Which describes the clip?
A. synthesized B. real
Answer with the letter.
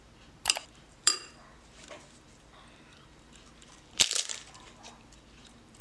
A